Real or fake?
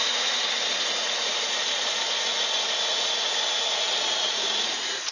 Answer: fake